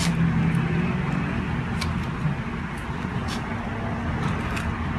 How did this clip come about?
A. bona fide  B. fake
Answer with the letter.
A